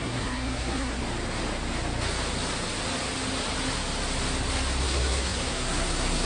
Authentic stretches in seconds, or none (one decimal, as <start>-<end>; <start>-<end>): 1.0-4.8